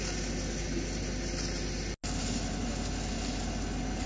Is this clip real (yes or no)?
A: yes